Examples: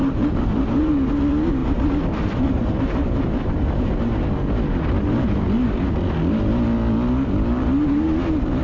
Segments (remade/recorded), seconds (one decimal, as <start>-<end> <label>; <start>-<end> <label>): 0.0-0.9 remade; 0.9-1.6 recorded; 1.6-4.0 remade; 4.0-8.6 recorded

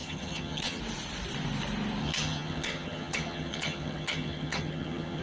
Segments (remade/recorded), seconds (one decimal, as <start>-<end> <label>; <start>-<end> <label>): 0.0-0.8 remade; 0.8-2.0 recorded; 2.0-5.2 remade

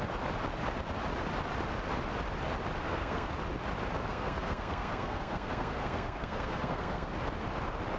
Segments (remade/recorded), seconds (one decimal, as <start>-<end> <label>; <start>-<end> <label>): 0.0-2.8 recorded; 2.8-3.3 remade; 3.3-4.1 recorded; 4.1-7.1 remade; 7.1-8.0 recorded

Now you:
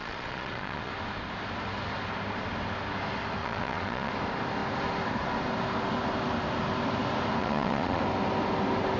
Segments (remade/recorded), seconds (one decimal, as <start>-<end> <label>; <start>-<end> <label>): 0.0-0.9 remade; 0.9-3.4 recorded; 3.4-4.1 remade; 4.1-7.4 recorded; 7.4-8.0 remade; 8.0-9.0 recorded

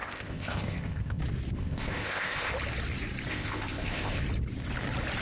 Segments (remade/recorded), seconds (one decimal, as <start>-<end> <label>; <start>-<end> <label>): 0.0-1.2 remade; 1.2-1.6 recorded; 1.6-2.5 remade; 2.5-3.3 recorded; 3.3-4.2 remade; 4.2-5.2 recorded

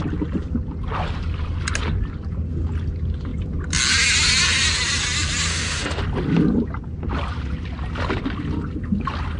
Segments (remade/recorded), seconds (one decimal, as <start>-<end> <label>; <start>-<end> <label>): 0.0-5.5 recorded; 5.5-6.0 remade; 6.0-9.4 recorded

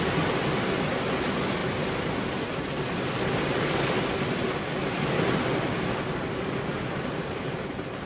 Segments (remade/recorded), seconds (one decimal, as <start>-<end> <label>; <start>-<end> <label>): 0.0-6.7 recorded; 6.7-8.1 remade